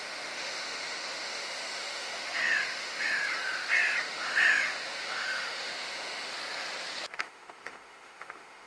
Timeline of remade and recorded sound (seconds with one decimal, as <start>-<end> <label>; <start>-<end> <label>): 0.0-3.2 remade; 3.2-4.0 recorded; 4.0-6.3 remade; 6.3-7.1 recorded; 7.1-8.7 remade